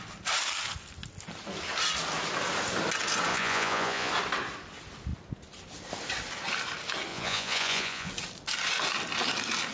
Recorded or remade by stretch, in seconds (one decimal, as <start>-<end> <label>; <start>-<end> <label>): 0.0-3.3 recorded; 3.3-4.1 remade; 4.1-7.1 recorded; 7.1-8.1 remade; 8.1-9.7 recorded